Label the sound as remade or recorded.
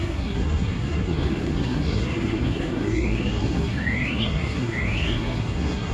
remade